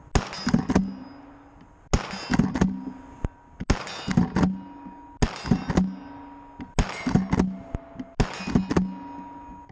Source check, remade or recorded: recorded